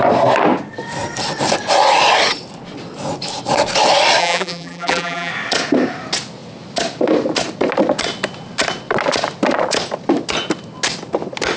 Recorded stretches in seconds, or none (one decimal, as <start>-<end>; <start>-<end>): 0.0-4.2; 5.3-11.6